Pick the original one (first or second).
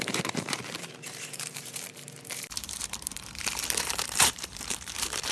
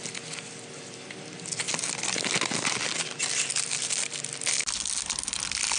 second